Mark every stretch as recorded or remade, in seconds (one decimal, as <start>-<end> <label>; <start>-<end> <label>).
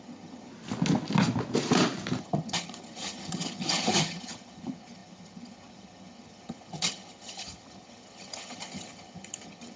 0.0-0.5 remade; 0.5-2.2 recorded; 2.2-9.8 remade